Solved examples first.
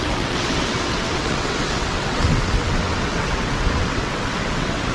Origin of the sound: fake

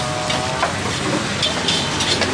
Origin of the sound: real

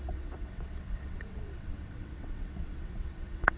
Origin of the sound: fake